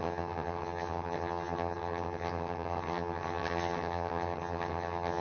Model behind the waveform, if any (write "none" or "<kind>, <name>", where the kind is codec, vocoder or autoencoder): vocoder, HiFi-GAN